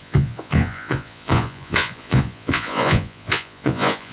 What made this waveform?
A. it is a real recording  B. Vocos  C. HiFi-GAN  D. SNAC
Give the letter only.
B